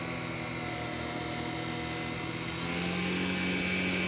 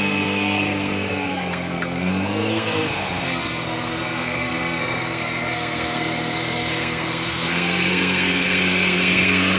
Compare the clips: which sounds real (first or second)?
first